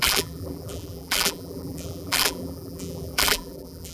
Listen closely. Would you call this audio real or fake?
fake